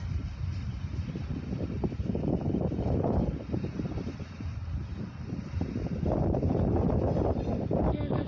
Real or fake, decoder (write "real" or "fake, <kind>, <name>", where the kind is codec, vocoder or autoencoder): real